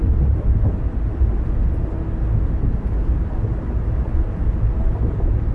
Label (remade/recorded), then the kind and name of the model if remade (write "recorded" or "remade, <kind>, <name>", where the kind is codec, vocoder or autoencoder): recorded